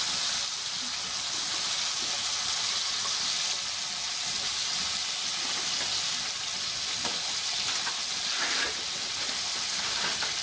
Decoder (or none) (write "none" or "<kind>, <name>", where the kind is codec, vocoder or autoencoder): none